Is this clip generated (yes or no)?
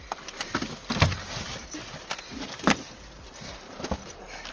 no